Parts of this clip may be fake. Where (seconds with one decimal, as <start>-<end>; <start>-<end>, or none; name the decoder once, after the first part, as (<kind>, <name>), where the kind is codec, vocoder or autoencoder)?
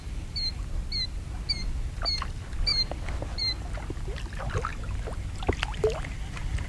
none